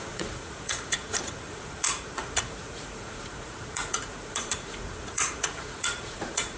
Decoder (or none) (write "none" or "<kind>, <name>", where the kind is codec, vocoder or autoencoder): vocoder, Vocos